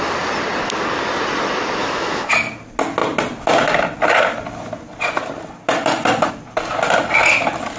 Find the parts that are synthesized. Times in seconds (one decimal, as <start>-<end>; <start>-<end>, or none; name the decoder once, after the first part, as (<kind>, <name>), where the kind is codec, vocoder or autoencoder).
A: 1.8-2.3 (autoencoder, DAC-VAE)

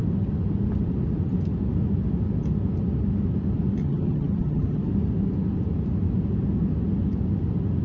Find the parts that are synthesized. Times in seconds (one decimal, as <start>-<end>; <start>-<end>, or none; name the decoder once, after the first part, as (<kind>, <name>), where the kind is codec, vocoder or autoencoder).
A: 3.8-4.8 (vocoder, HiFi-GAN)

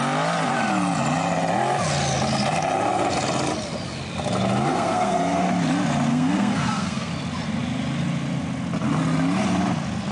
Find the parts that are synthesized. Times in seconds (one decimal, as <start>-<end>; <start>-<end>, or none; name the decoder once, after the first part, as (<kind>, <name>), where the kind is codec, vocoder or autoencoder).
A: 4.7-5.5 (codec, SNAC); 6.1-7.1

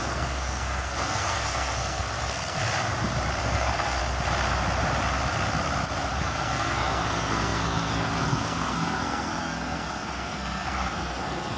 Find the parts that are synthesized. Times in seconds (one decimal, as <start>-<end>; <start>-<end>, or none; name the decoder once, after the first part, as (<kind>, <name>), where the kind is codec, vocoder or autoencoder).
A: 0.0-2.6 (codec, SNAC); 3.4-4.0; 6.2-11.6

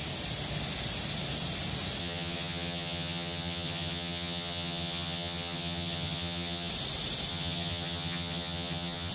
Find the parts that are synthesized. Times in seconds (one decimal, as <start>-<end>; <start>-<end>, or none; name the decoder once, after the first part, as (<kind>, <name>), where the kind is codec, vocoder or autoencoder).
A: 2.0-6.7 (vocoder, HiFi-GAN); 7.3-9.1

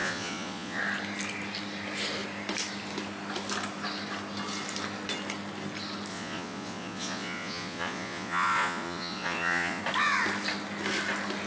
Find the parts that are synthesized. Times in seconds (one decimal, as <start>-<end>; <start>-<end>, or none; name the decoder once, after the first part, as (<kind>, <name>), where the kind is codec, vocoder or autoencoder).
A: 0.0-0.8 (vocoder, Vocos); 6.1-9.8